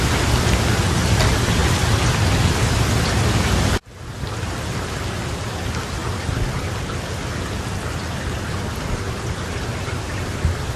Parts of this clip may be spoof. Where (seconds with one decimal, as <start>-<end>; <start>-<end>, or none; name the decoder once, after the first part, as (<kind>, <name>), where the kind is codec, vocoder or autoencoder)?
none